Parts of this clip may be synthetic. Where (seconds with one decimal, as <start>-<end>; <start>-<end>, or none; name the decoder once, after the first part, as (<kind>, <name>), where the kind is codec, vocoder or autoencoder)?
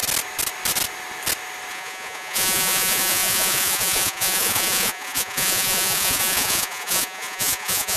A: 1.7-8.0 (vocoder, Vocos)